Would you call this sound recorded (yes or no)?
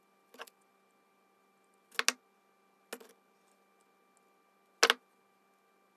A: yes